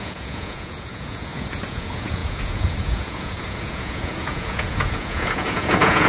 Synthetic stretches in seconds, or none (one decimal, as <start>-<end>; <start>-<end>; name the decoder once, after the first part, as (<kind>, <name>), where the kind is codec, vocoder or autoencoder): 0.0-6.1 (vocoder, Vocos)